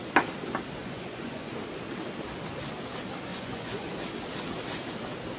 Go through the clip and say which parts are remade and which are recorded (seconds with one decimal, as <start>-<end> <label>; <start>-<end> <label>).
0.0-0.8 recorded; 0.8-1.5 remade; 1.5-3.3 recorded; 3.3-3.9 remade; 3.9-5.4 recorded